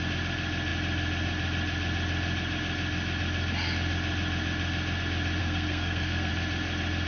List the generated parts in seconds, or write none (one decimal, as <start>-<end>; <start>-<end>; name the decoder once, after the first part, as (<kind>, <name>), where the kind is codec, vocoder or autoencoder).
5.4-6.3 (codec, SNAC)